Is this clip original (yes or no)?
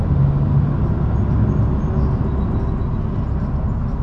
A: yes